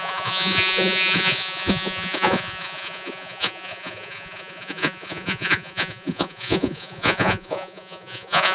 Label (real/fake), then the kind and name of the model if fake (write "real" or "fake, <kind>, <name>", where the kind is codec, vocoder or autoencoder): fake, vocoder, Vocos